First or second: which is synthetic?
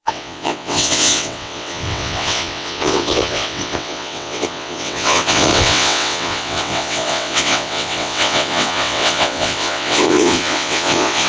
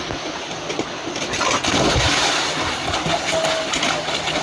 first